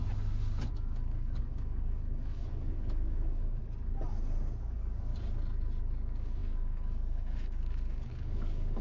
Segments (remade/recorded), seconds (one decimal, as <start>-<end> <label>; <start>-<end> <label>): 0.0-0.7 recorded; 0.7-3.6 remade; 3.6-4.6 recorded; 4.6-5.1 remade; 5.1-5.8 recorded; 5.8-8.8 remade